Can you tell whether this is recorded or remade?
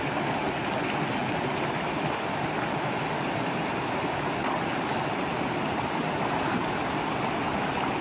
recorded